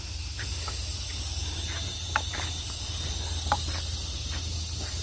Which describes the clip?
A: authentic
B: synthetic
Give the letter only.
A